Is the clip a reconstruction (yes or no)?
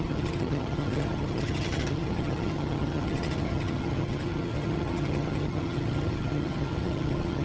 yes